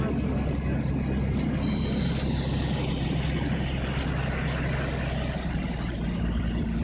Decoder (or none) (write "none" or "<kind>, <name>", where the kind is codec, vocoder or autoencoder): none